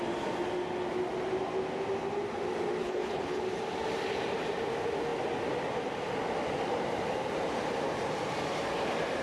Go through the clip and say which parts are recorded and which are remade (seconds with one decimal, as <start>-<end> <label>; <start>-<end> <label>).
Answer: 0.0-2.8 recorded; 2.8-3.4 remade; 3.4-9.2 recorded